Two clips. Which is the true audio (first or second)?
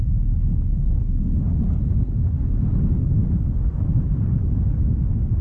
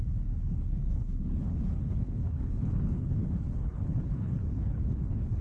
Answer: first